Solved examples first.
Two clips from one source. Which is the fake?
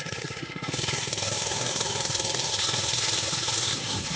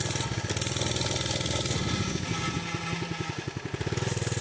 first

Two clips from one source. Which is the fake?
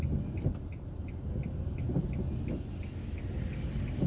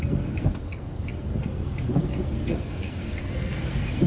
second